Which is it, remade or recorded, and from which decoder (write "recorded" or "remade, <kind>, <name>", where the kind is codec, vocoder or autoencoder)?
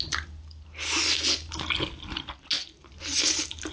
recorded